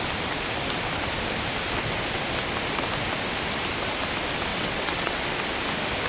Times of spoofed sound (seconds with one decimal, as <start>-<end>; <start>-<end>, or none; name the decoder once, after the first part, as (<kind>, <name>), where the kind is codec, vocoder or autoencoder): 4.5-5.2 (vocoder, WaveNeXt)